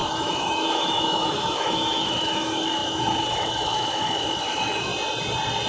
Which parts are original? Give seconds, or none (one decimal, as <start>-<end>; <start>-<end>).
4.9-5.7